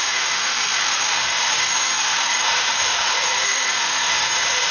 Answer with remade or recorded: remade